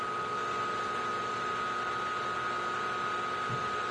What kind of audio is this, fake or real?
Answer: real